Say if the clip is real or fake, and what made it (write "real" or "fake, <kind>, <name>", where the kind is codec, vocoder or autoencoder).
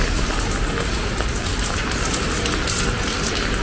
real